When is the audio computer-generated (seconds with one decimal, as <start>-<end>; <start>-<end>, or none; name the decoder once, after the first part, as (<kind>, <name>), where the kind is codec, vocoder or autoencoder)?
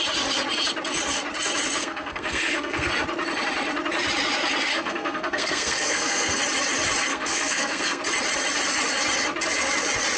1.8-2.9 (codec, SNAC); 4.7-6.4; 7.1-8.0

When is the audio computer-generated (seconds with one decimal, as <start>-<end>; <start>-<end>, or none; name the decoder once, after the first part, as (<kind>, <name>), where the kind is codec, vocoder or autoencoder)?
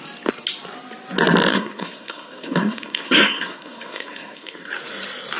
1.5-4.7 (codec, SNAC)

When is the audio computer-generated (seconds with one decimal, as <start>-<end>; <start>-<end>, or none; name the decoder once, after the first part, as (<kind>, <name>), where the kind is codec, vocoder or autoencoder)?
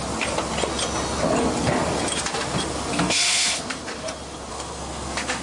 2.9-3.8 (codec, SNAC); 4.5-5.4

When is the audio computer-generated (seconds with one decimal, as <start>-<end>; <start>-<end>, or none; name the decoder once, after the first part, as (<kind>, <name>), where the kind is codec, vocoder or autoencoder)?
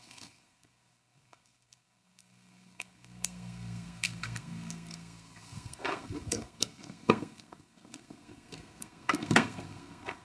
0.0-10.2 (codec, SNAC)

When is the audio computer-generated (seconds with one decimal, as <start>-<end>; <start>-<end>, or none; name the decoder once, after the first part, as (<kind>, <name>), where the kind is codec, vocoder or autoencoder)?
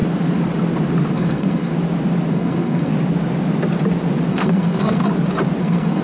1.1-1.7 (codec, SNAC); 2.3-2.9; 4.3-5.0; 5.6-6.0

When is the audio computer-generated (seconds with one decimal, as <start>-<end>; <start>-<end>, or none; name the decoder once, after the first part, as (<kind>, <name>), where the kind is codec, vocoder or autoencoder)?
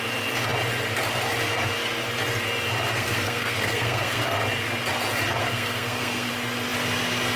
2.9-4.2 (codec, SNAC); 5.4-6.3